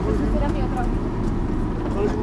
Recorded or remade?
recorded